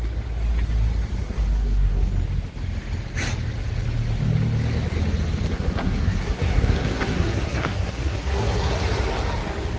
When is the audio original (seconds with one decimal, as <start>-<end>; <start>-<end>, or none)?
0.0-1.2; 2.1-5.5; 8.8-9.8